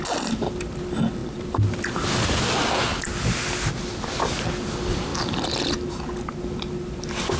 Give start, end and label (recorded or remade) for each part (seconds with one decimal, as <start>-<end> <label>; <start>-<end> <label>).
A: 0.0-1.2 recorded; 1.2-2.0 remade; 2.0-7.4 recorded